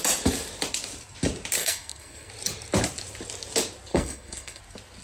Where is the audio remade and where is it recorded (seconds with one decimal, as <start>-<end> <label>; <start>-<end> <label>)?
0.0-1.6 recorded; 1.6-2.3 remade; 2.3-3.9 recorded; 3.9-4.6 remade; 4.6-5.0 recorded